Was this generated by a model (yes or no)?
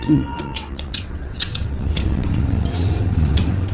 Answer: yes